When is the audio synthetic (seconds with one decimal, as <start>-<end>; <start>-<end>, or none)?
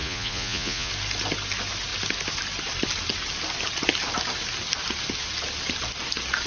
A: 0.0-0.9